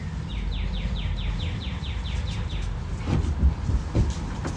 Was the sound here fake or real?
real